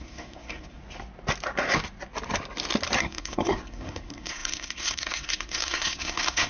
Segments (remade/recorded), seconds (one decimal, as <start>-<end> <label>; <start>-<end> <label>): 0.0-0.8 remade; 0.8-3.0 recorded; 3.0-6.5 remade

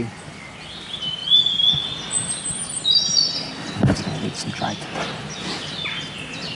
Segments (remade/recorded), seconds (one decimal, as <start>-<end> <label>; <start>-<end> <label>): 0.0-6.5 recorded

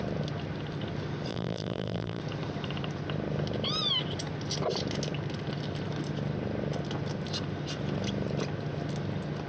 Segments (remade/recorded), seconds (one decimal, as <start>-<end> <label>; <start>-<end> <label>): 0.0-1.3 recorded; 1.3-2.2 remade; 2.2-9.5 recorded

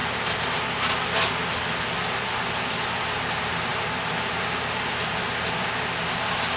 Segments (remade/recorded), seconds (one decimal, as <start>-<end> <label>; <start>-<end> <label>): 0.0-6.6 recorded